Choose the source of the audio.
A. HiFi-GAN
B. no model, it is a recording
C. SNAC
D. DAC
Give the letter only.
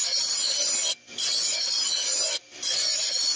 B